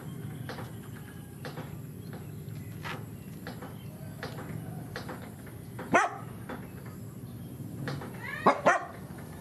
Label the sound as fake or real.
real